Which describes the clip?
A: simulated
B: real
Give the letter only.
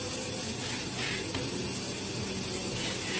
B